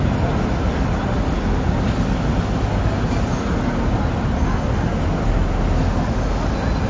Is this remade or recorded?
recorded